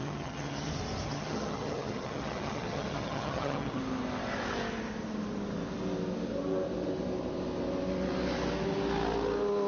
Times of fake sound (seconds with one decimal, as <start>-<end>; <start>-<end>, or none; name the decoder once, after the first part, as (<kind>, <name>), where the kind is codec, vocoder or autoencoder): 0.0-0.7 (vocoder, HiFi-GAN); 1.1-3.8